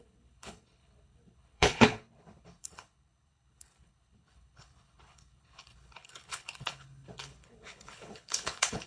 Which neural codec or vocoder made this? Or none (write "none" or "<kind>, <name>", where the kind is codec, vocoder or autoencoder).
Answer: codec, HILCodec